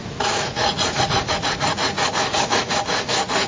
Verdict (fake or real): fake